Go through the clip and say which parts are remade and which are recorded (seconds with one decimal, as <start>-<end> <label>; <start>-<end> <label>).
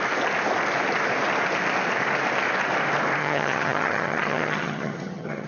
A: 0.0-3.2 recorded; 3.2-5.5 remade